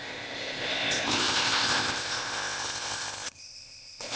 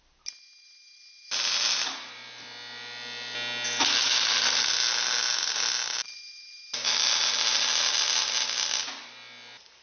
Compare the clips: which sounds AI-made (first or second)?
first